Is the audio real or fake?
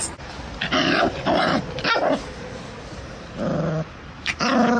fake